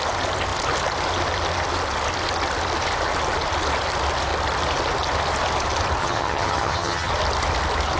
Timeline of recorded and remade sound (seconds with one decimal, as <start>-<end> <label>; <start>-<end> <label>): 0.0-6.0 recorded; 6.0-7.1 remade; 7.1-8.0 recorded